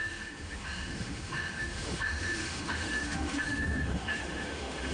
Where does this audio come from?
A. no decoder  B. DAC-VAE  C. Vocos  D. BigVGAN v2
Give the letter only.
B